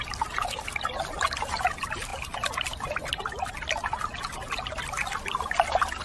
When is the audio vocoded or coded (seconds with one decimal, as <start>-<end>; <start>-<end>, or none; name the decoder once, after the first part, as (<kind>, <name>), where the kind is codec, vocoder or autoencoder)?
none